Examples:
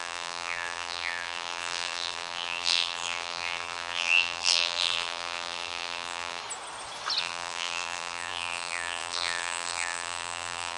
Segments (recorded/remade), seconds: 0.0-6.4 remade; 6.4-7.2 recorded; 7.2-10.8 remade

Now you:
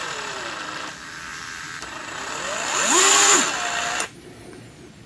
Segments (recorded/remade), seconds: 0.0-1.3 recorded; 1.3-4.4 remade; 4.4-5.1 recorded